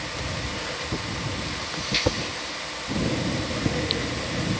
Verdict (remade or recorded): recorded